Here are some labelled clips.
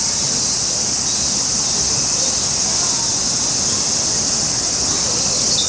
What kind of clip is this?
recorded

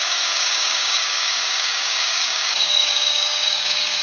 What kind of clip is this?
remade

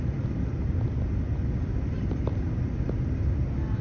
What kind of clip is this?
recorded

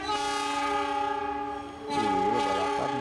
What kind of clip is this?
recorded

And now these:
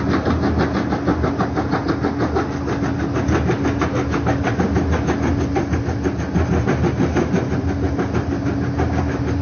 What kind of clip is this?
recorded